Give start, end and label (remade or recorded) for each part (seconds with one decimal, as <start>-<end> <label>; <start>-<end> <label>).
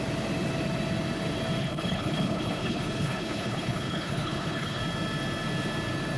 0.0-1.6 recorded; 1.6-4.8 remade; 4.8-6.2 recorded